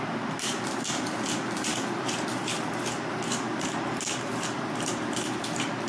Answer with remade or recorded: remade